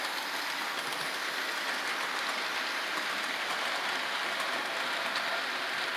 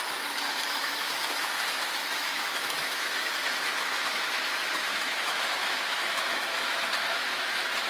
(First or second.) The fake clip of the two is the second